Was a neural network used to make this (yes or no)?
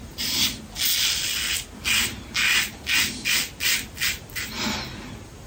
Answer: no